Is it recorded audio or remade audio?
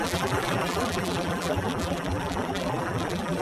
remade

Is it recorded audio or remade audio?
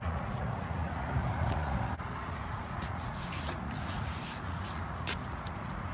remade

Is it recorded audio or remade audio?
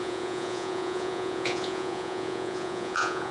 remade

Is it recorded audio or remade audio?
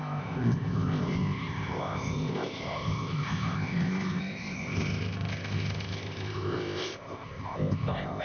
remade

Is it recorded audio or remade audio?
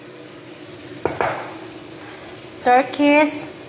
recorded